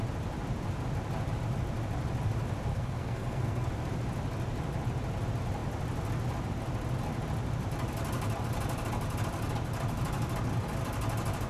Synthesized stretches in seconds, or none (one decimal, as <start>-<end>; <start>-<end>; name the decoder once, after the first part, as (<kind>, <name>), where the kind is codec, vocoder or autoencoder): 2.7-3.7 (codec, SNAC)